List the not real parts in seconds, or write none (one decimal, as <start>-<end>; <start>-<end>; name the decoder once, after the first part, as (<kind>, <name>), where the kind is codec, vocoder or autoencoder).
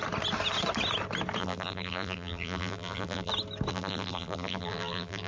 1.4-3.3 (vocoder, BigVGAN v2); 3.7-5.3